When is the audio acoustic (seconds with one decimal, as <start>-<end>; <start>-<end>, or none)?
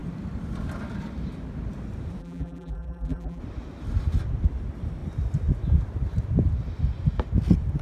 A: 0.0-2.2; 3.4-7.8